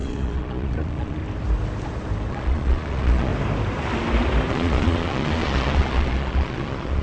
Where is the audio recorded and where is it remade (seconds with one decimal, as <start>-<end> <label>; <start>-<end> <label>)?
0.0-1.2 remade; 1.2-2.3 recorded; 2.3-3.3 remade; 3.3-4.5 recorded; 4.5-7.0 remade